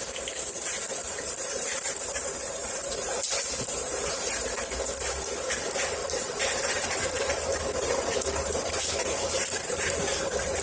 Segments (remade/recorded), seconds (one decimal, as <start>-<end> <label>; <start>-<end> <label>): 0.0-1.0 recorded; 1.0-3.2 remade; 3.2-3.7 recorded; 3.7-4.6 remade; 4.6-6.0 recorded; 6.0-10.0 remade; 10.0-10.6 recorded